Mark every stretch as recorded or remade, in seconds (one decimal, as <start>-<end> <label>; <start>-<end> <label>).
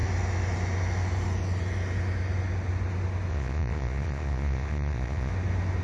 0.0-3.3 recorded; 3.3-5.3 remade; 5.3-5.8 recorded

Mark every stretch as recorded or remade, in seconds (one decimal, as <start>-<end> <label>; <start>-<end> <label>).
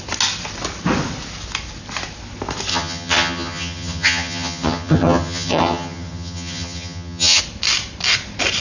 0.0-2.7 recorded; 2.7-7.4 remade; 7.4-8.6 recorded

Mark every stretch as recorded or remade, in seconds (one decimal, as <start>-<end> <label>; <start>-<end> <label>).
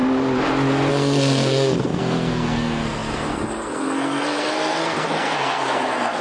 0.0-0.9 recorded; 0.9-6.2 remade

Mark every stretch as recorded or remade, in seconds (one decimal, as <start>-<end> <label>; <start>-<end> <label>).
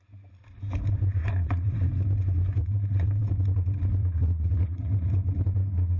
0.0-1.2 recorded; 1.2-1.9 remade; 1.9-2.6 recorded; 2.6-3.3 remade; 3.3-4.0 recorded; 4.0-5.1 remade; 5.1-6.0 recorded